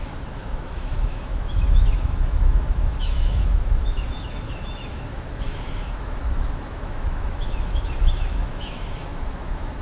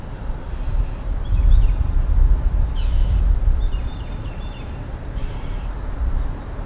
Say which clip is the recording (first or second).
second